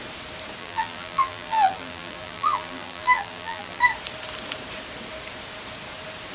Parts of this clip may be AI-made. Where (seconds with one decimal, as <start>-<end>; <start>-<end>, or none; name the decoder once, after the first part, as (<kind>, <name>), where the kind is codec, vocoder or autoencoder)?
0.6-3.8 (vocoder, BigVGAN v2)